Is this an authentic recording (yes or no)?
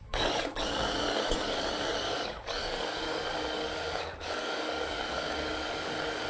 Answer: no